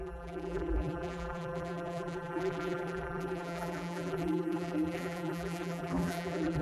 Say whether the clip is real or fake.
fake